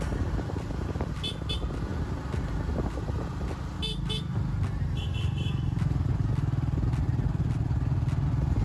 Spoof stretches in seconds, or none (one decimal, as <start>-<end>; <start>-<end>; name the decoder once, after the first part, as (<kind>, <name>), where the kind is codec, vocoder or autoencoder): none